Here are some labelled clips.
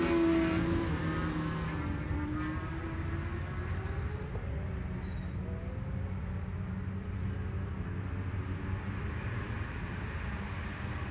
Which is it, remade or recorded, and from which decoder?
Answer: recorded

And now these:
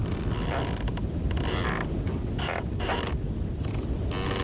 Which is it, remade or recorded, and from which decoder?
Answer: recorded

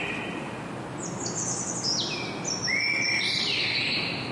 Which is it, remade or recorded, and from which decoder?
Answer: recorded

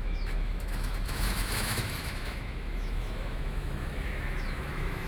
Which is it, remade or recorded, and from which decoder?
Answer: remade, autoencoder, DAC-VAE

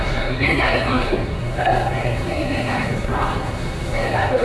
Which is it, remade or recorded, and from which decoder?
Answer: remade, codec, SNAC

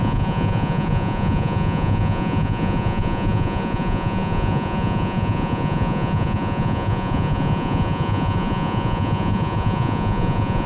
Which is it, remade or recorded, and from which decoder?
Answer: remade, vocoder, Vocos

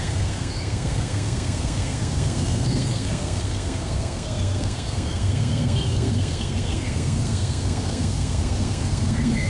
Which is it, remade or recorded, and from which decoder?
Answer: remade, codec, SNAC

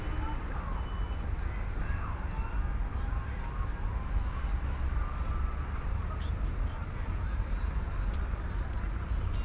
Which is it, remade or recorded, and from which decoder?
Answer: recorded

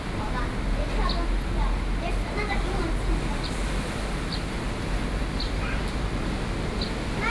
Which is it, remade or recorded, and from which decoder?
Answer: recorded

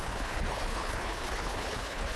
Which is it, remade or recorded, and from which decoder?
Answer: remade, codec, HILCodec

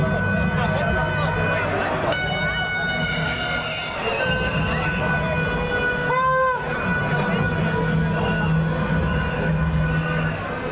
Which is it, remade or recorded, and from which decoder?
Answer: recorded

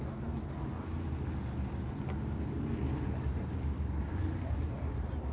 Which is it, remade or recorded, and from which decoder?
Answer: recorded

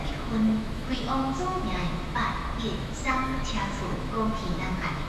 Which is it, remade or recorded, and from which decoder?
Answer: remade, autoencoder, DAC-VAE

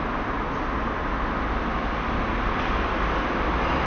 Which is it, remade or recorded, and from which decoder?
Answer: recorded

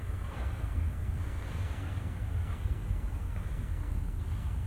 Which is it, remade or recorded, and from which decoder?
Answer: remade, codec, SNAC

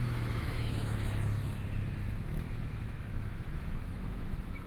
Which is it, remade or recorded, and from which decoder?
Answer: remade, autoencoder, DAC-VAE